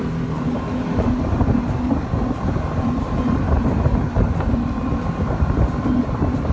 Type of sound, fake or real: fake